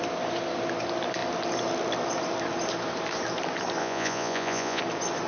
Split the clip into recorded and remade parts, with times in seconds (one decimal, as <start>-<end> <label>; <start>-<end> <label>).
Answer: 0.0-3.8 recorded; 3.8-4.8 remade; 4.8-5.3 recorded